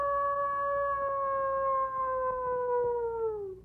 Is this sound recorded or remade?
recorded